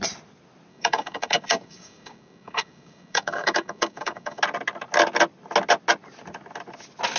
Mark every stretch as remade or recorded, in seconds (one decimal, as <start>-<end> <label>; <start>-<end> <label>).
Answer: 0.0-0.7 recorded; 0.7-4.4 remade; 4.4-7.2 recorded